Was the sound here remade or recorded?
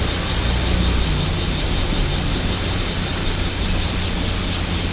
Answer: recorded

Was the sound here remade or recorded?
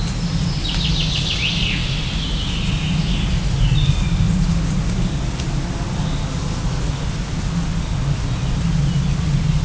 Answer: recorded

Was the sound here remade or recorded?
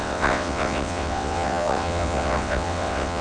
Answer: remade